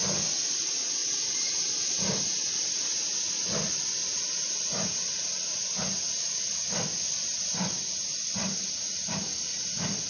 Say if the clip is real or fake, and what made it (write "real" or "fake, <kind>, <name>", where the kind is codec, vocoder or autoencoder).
real